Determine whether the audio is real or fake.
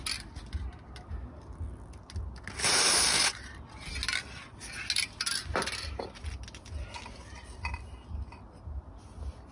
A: real